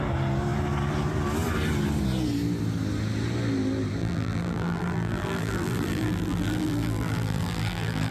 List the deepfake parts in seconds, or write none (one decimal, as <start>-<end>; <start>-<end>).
4.0-8.1